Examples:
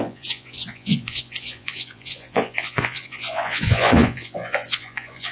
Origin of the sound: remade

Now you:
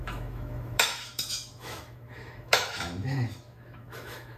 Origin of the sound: remade